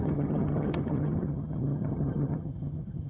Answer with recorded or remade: remade